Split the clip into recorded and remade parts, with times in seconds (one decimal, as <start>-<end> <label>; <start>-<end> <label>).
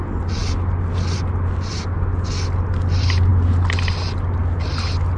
0.0-5.2 recorded